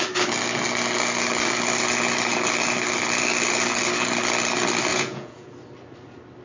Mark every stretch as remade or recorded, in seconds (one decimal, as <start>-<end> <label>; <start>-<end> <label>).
0.0-4.9 recorded; 4.9-5.5 remade; 5.5-6.4 recorded